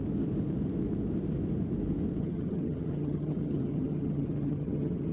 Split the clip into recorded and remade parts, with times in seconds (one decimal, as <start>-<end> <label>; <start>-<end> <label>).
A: 0.0-2.2 recorded; 2.2-5.1 remade